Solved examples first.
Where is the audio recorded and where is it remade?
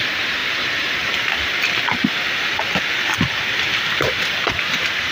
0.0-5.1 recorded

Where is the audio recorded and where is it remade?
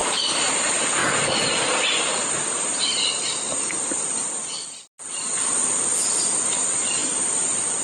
0.0-0.5 remade; 0.5-7.8 recorded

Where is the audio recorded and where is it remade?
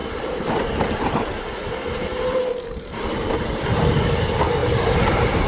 0.0-3.3 remade; 3.3-4.6 recorded; 4.6-5.5 remade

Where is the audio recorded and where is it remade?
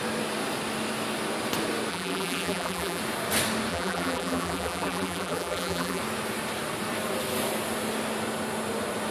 0.0-1.9 recorded; 1.9-3.0 remade; 3.0-3.7 recorded; 3.7-6.0 remade; 6.0-9.1 recorded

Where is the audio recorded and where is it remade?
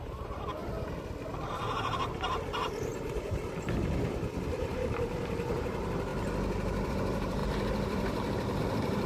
0.0-0.6 remade; 0.6-1.5 recorded; 1.5-6.1 remade; 6.1-6.9 recorded; 6.9-9.1 remade